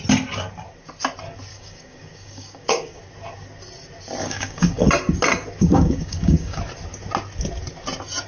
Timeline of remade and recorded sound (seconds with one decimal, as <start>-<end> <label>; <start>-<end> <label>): 0.0-1.5 recorded; 1.5-3.0 remade; 3.0-4.2 recorded; 4.2-4.9 remade; 4.9-5.6 recorded; 5.6-6.6 remade; 6.6-8.3 recorded

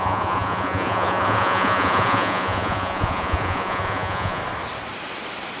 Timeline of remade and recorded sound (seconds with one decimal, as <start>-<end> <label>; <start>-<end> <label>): 0.0-4.4 remade; 4.4-5.6 recorded

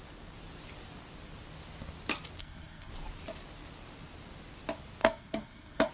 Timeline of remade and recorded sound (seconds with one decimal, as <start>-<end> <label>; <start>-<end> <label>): 0.0-2.4 recorded; 2.4-2.9 remade; 2.9-5.0 recorded; 5.0-5.9 remade

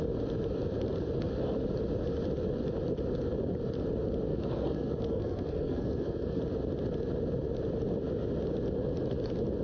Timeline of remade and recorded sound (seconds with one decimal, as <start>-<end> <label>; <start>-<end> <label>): 0.0-4.3 recorded; 4.3-6.4 remade; 6.4-9.6 recorded

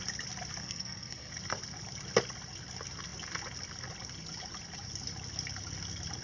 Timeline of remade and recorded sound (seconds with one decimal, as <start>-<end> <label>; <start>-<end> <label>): 0.0-0.6 recorded; 0.6-1.3 remade; 1.3-6.2 recorded

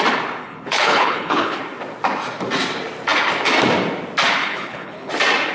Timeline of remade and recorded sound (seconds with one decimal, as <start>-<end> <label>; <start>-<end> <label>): 0.0-0.4 recorded; 0.4-1.6 remade; 1.6-4.4 recorded; 4.4-5.1 remade; 5.1-5.5 recorded

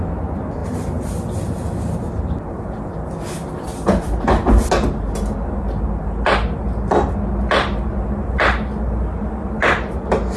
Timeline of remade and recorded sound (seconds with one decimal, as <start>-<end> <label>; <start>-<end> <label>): 0.0-0.6 recorded; 0.6-4.7 remade; 4.7-10.4 recorded